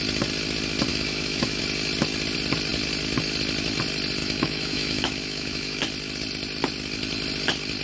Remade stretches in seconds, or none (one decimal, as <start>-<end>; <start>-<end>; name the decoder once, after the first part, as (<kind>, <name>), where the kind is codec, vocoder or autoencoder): 0.9-1.6 (autoencoder, DAC-VAE); 4.2-5.8